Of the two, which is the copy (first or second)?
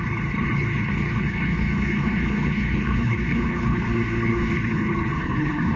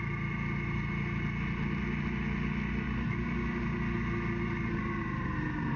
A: first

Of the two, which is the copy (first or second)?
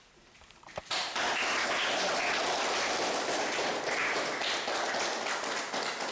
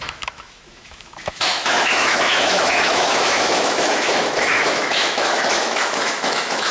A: second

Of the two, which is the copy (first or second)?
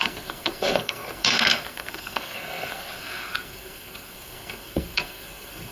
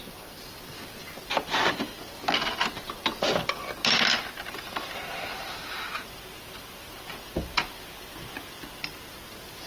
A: first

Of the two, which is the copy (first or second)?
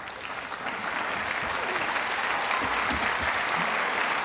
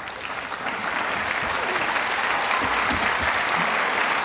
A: second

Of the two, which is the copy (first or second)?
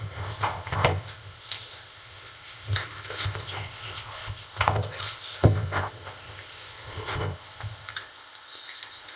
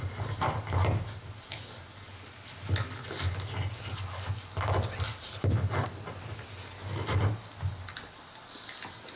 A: first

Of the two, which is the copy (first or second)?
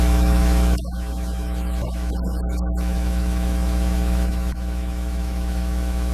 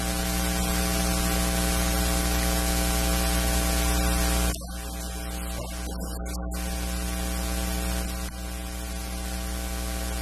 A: first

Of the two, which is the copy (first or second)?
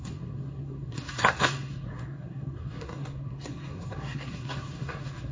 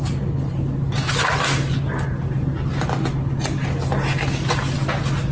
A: first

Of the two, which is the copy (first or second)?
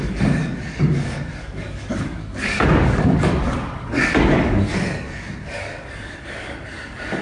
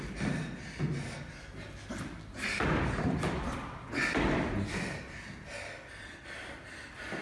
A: first